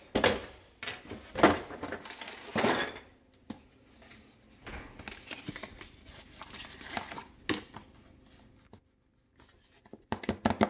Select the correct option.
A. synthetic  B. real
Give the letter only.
B